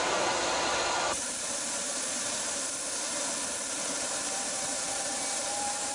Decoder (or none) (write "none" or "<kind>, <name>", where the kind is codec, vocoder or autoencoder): vocoder, BigVGAN v2